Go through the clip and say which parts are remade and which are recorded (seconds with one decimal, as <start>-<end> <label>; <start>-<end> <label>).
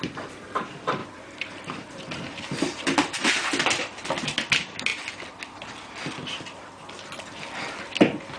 0.0-1.0 recorded; 1.0-3.3 remade; 3.3-8.4 recorded